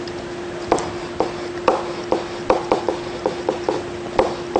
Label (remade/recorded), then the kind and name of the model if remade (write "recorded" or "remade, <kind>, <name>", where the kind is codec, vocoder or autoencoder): recorded